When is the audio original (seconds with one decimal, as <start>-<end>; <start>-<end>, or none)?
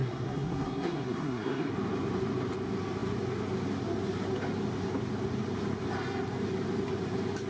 1.7-7.5